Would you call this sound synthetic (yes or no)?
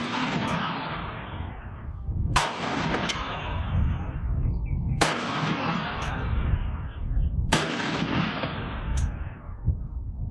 yes